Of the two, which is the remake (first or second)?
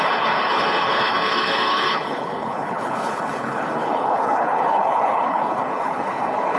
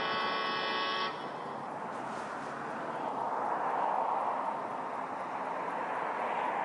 first